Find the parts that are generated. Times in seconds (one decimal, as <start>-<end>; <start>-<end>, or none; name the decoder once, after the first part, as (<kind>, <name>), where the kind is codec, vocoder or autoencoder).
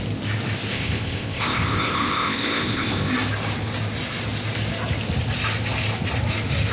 0.7-3.1 (codec, ZipCodec)